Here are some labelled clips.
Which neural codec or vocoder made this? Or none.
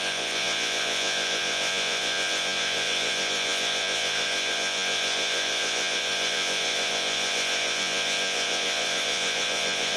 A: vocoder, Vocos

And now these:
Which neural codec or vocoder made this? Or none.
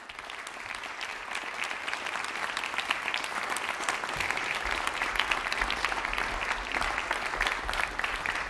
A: none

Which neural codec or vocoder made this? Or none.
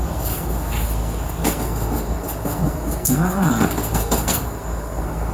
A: codec, SNAC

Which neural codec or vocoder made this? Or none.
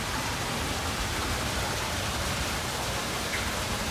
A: vocoder, BigVGAN v2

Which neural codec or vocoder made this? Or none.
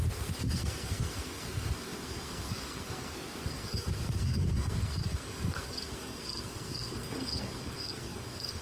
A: codec, SNAC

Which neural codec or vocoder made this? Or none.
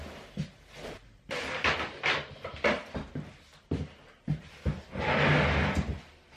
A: none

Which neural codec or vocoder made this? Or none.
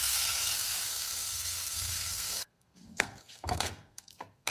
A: codec, SNAC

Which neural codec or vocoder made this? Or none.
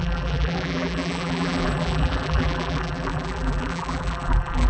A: vocoder, BigVGAN v2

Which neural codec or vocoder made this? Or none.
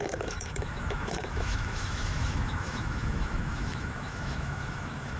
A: autoencoder, DAC-VAE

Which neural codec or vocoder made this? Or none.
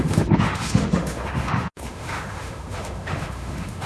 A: autoencoder, DAC-VAE